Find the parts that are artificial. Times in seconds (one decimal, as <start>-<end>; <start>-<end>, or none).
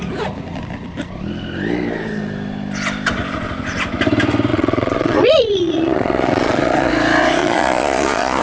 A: 4.5-6.9; 7.4-8.4